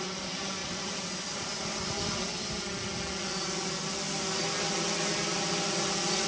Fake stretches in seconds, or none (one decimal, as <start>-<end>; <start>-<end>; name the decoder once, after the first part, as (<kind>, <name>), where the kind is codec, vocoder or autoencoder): none